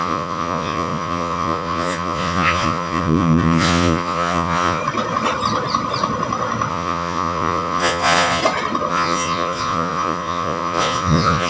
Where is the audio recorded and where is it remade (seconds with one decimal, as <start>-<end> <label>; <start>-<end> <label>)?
0.0-4.8 remade; 4.8-6.7 recorded; 6.7-8.4 remade; 8.4-8.9 recorded; 8.9-11.5 remade